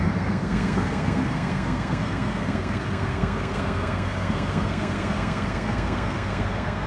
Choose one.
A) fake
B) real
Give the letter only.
A